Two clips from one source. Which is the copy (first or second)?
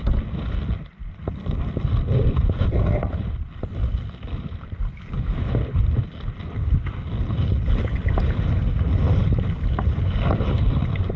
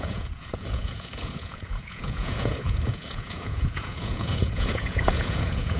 second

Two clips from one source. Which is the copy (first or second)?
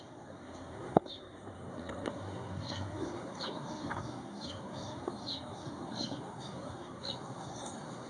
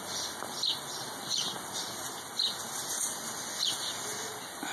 first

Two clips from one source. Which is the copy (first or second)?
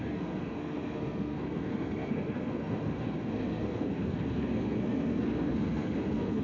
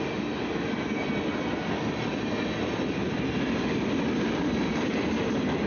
first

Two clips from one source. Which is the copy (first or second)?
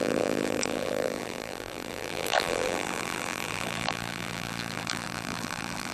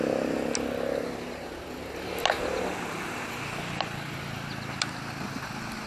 first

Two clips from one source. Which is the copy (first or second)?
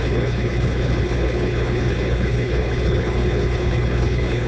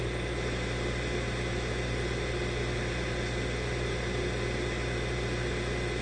first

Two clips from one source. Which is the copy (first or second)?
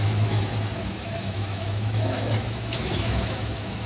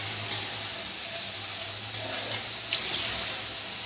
first